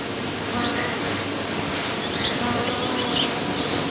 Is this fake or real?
real